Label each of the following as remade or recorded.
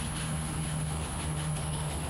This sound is remade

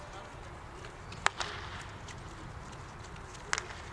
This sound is recorded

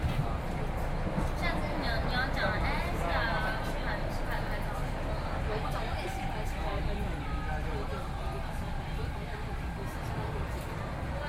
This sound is recorded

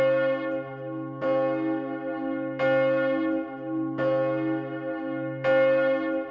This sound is recorded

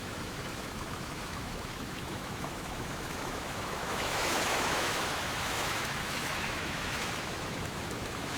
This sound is remade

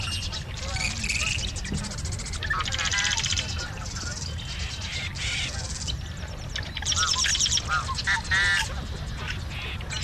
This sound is recorded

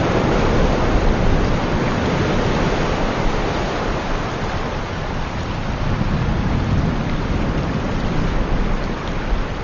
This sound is recorded